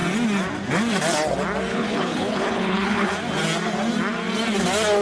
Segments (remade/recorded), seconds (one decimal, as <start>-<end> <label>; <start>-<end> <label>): 0.0-1.7 recorded; 1.7-3.1 remade; 3.1-5.0 recorded